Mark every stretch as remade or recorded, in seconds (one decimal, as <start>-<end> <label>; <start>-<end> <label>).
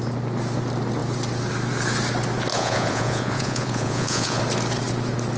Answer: 0.0-2.5 recorded; 2.5-4.4 remade; 4.4-5.4 recorded